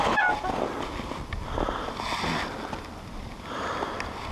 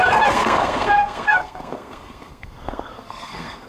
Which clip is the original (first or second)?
first